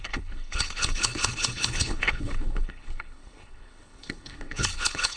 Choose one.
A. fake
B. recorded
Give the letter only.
A